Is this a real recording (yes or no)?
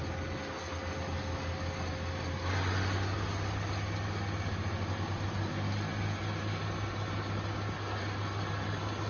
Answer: yes